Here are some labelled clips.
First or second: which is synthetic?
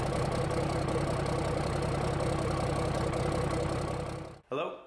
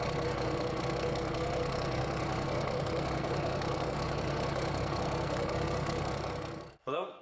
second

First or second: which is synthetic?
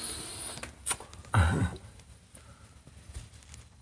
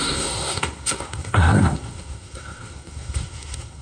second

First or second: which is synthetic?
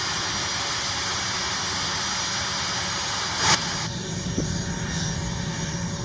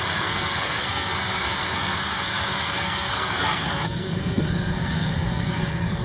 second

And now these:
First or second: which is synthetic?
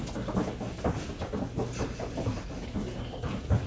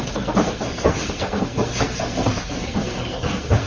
second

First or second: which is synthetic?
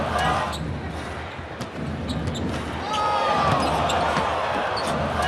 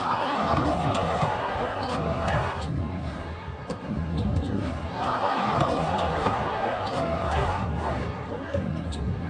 second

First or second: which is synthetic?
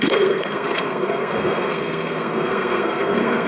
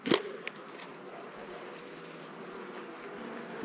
first